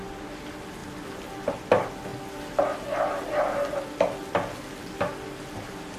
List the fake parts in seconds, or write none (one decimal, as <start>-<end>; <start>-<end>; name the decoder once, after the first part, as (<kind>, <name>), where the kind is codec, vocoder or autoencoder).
none